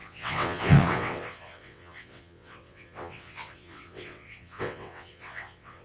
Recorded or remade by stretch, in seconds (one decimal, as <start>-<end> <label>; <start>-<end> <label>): 0.0-5.8 remade